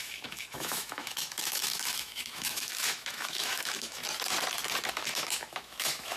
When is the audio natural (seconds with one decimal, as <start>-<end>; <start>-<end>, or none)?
4.0-4.9